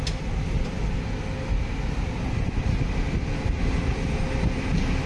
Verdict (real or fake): real